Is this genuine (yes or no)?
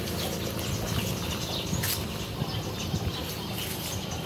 yes